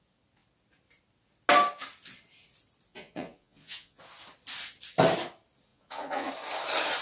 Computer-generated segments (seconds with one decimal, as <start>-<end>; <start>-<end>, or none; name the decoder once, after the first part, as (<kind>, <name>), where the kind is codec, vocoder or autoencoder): 2.9-4.0 (vocoder, Vocos); 5.7-6.3